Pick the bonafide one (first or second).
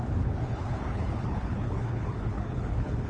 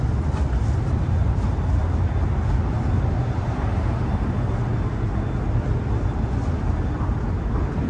second